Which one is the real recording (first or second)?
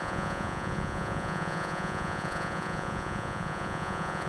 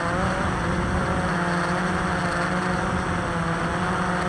second